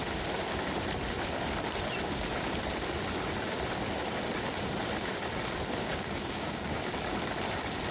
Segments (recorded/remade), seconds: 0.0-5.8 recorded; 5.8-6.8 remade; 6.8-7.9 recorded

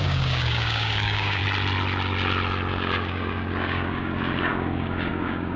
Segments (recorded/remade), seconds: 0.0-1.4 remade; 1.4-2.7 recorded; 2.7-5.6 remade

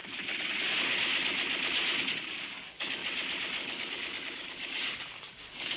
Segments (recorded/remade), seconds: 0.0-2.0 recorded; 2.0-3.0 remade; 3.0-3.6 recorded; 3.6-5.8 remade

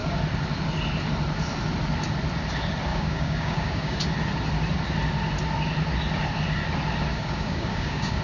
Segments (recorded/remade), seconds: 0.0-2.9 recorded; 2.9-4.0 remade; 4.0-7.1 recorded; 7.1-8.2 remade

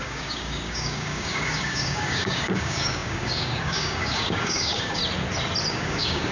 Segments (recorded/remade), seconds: 0.0-5.0 remade; 5.0-5.7 recorded; 5.7-6.3 remade

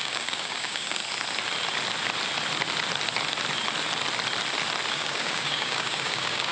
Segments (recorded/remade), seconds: 0.0-1.0 remade; 1.0-4.9 recorded; 4.9-6.5 remade

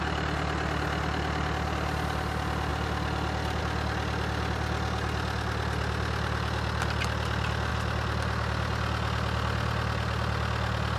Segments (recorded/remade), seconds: 0.0-11.0 recorded

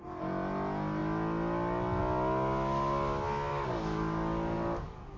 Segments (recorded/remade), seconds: 0.0-3.5 recorded; 3.5-5.2 remade